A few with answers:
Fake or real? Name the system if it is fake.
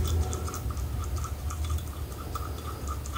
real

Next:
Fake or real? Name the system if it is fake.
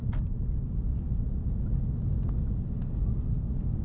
real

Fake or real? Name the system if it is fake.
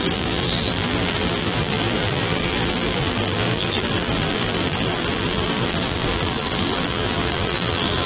fake, vocoder, BigVGAN v2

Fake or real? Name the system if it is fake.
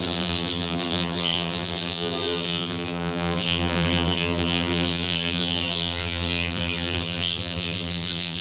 fake, vocoder, BigVGAN v2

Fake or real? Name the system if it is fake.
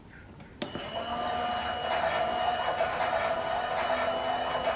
real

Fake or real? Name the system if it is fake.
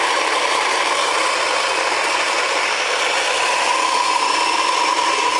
fake, vocoder, BigVGAN v2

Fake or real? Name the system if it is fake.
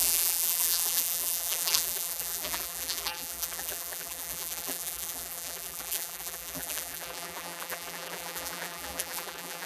fake, vocoder, BigVGAN v2